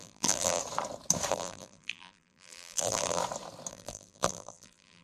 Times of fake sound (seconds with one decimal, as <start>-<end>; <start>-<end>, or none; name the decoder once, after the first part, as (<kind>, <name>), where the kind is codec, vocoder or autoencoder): 0.0-0.6 (vocoder, BigVGAN v2); 1.3-3.2; 3.7-5.0

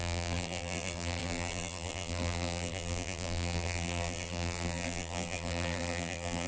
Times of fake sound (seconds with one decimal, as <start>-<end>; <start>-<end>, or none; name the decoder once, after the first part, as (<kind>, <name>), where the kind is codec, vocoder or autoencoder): 0.0-6.5 (vocoder, BigVGAN v2)

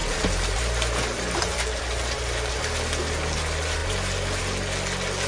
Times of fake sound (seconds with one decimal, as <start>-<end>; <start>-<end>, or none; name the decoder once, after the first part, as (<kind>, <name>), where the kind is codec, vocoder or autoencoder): 0.0-2.5 (vocoder, BigVGAN v2)

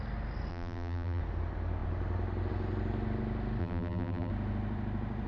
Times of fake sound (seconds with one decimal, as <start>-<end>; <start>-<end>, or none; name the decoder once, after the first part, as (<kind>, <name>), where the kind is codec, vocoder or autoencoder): 0.5-1.2 (vocoder, BigVGAN v2); 3.6-4.3

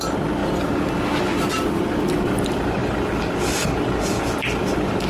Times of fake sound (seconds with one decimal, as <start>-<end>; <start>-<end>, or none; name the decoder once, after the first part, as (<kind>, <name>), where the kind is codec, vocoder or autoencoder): 0.0-0.4 (vocoder, BigVGAN v2); 1.5-5.1

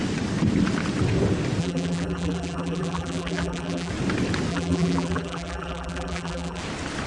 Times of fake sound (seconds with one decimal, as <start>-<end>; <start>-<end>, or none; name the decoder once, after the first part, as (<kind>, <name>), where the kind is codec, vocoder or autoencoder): 1.6-3.9 (vocoder, BigVGAN v2); 4.5-6.6